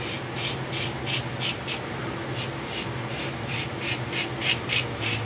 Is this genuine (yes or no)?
yes